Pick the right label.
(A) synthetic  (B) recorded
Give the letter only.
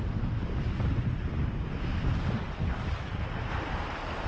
B